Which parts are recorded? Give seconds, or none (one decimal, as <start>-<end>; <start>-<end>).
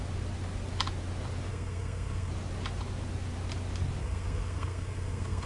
0.0-1.5; 2.3-4.0